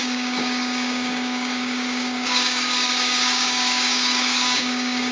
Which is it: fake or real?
fake